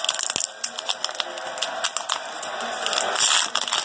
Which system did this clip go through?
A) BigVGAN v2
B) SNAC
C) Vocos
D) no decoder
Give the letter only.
D